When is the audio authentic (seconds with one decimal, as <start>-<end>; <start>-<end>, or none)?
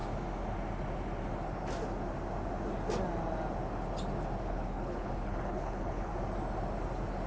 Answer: 0.0-4.4; 6.1-7.3